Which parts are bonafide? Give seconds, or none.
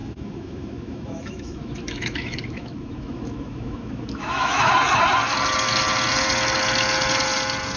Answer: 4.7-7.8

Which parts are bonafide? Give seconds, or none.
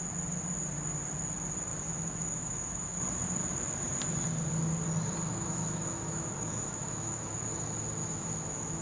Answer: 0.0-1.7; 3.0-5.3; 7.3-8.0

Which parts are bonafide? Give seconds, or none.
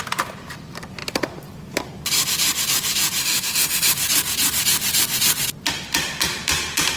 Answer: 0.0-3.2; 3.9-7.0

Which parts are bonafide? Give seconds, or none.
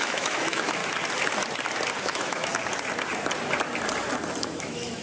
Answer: 0.8-2.0; 2.5-4.4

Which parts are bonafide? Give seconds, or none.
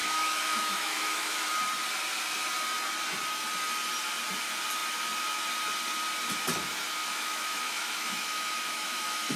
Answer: 1.5-7.0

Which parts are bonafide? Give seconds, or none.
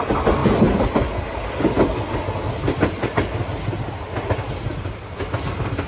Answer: 0.0-5.9